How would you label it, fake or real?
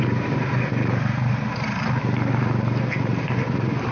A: real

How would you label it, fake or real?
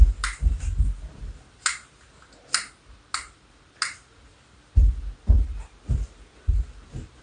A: real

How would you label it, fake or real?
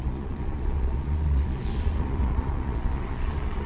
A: fake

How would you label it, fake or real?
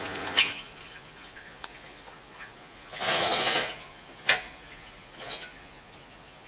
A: fake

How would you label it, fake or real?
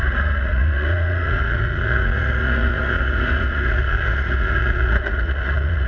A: fake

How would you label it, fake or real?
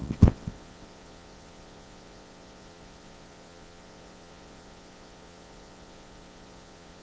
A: fake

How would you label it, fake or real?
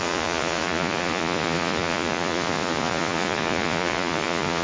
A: fake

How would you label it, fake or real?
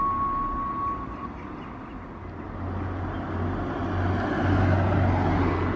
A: real